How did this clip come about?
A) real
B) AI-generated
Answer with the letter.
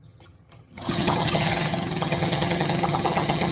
B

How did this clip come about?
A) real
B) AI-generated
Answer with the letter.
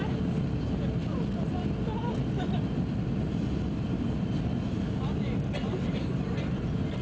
A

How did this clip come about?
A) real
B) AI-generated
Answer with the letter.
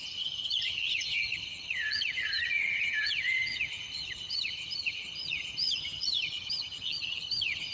B